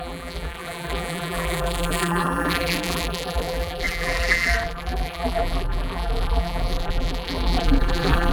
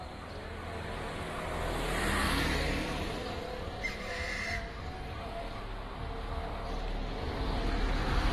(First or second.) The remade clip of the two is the first